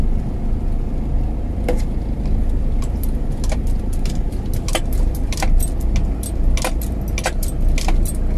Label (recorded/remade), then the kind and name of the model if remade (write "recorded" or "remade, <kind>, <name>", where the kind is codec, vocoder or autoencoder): recorded